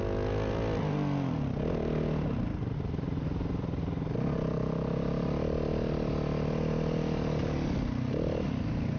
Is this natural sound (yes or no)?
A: yes